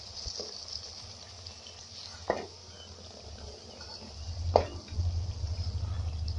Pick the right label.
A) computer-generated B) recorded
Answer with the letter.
B